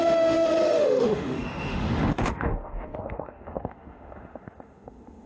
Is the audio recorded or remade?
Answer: remade